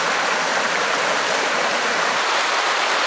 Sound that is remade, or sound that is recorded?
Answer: recorded